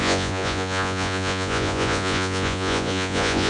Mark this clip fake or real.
fake